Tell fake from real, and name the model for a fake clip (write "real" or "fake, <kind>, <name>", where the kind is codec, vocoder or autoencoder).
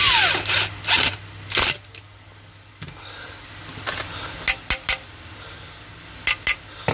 real